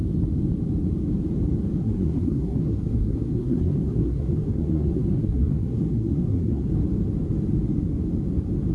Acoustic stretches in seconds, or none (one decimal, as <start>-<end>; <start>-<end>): 0.0-1.8; 6.7-8.7